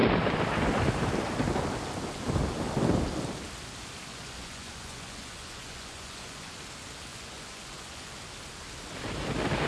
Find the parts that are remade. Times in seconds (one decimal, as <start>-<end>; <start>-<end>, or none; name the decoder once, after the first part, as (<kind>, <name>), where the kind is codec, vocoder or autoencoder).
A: 4.1-6.5 (vocoder, Vocos); 7.1-8.1